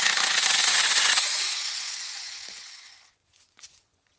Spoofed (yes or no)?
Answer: yes